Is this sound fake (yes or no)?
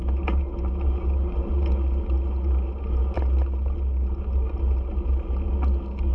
no